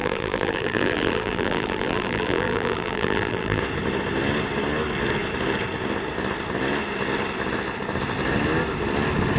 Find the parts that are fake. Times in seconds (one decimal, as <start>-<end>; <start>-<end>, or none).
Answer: 0.0-3.6